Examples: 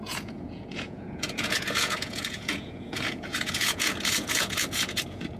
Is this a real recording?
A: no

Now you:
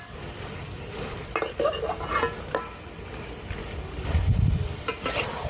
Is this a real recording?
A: yes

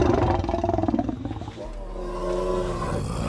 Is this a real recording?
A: yes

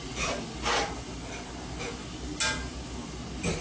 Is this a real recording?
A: yes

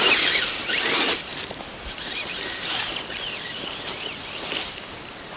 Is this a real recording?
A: yes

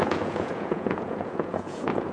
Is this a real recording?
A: no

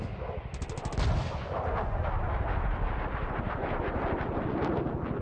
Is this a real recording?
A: yes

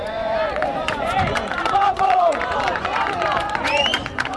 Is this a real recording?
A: no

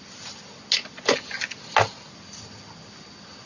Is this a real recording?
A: yes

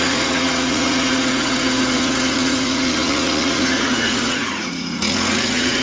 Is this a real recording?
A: no